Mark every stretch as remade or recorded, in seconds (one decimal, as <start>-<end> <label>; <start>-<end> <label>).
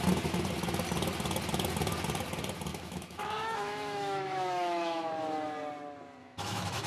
0.0-2.7 recorded; 2.7-5.1 remade; 5.1-6.2 recorded; 6.2-6.9 remade